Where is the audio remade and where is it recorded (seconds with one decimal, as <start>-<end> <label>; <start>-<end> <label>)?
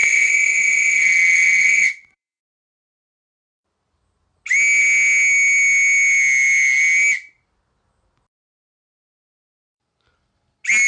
0.0-2.4 remade; 2.4-10.9 recorded